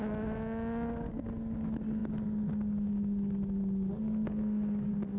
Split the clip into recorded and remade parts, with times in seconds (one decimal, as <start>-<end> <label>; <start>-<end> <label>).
0.0-5.2 recorded